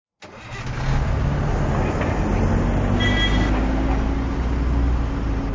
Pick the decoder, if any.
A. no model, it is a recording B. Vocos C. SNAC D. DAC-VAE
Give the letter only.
A